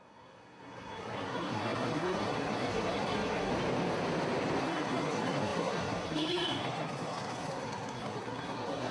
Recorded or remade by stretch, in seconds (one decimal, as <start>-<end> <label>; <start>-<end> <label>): 0.0-3.5 remade; 3.5-4.6 recorded; 4.6-8.9 remade